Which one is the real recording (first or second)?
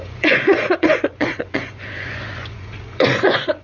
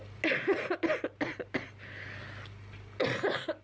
second